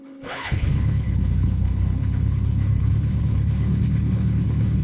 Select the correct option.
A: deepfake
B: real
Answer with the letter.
A